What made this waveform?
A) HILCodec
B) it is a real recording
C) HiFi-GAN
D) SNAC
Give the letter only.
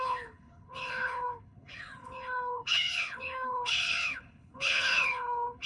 A